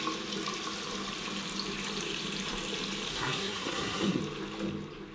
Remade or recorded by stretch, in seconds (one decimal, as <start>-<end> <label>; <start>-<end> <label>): 0.0-3.1 recorded; 3.1-4.2 remade; 4.2-5.1 recorded